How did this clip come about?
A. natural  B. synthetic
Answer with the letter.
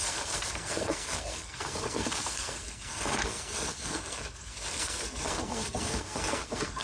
B